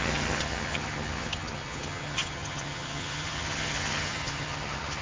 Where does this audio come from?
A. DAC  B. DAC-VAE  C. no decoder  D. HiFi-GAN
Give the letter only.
D